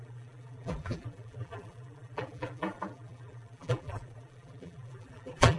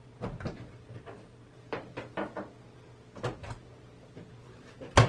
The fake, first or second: first